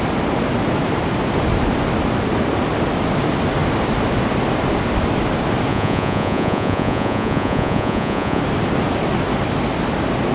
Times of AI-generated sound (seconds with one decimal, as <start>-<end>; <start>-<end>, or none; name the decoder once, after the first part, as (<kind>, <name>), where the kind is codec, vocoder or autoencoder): 5.7-8.4 (vocoder, Vocos)